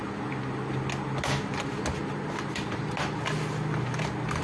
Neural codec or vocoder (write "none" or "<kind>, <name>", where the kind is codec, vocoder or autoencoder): none